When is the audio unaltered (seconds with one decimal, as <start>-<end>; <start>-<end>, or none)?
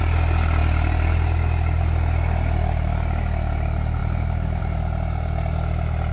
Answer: 0.0-6.1